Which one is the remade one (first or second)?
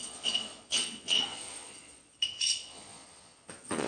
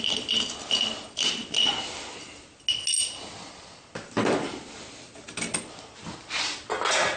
first